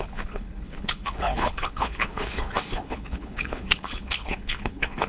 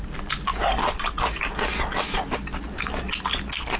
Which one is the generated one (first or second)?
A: first